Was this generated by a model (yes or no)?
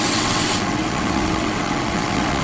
yes